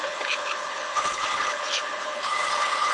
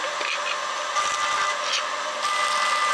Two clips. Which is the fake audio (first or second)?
first